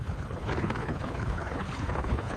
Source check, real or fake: fake